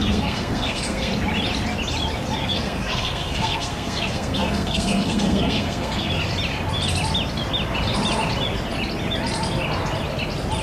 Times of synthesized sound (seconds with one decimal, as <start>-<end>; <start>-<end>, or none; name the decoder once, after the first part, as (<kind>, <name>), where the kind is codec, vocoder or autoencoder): 0.0-1.1 (codec, SNAC); 2.4-6.1